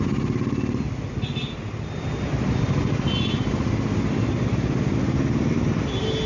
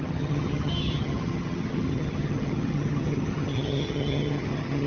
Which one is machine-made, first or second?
second